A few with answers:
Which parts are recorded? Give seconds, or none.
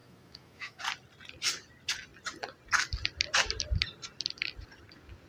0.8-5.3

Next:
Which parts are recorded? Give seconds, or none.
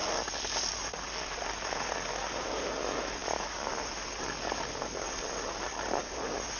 0.0-6.6